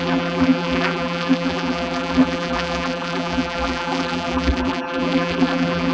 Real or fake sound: fake